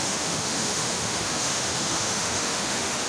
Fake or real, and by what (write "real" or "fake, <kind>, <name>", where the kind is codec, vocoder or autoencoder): fake, autoencoder, DAC-VAE